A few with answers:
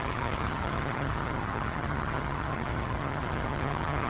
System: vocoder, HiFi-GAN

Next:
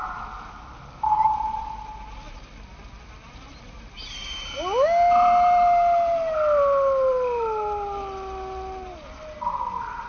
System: none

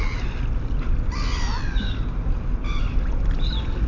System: none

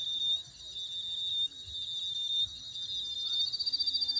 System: none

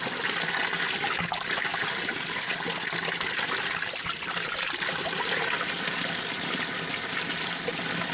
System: none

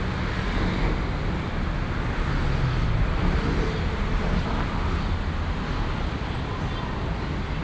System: none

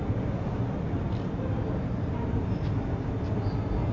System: none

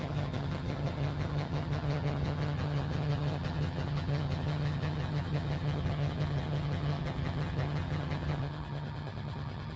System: vocoder, HiFi-GAN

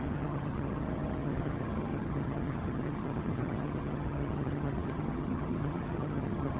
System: vocoder, HiFi-GAN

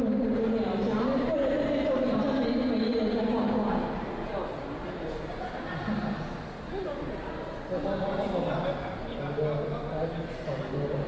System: none